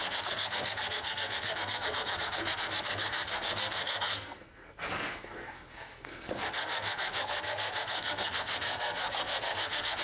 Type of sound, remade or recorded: remade